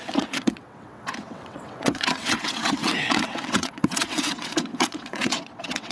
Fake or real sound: fake